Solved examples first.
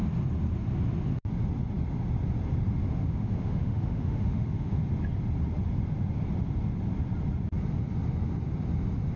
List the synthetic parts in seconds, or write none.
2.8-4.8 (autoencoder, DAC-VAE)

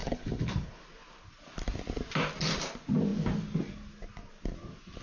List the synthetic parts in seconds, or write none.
0.0-0.8 (codec, HILCodec)